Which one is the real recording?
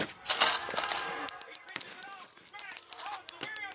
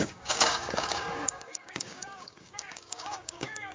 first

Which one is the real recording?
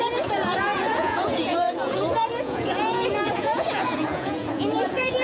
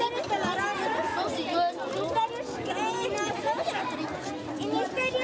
second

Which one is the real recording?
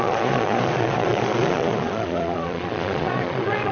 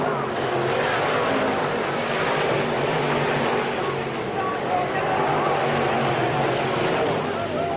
second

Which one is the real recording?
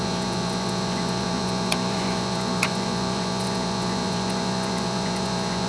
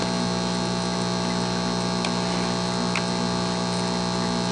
second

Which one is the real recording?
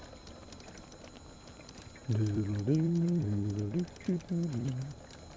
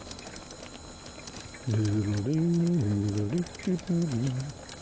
second